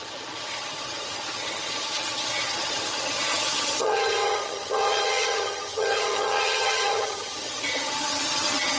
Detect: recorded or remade remade